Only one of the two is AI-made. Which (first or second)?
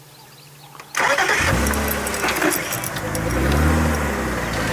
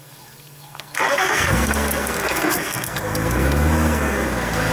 second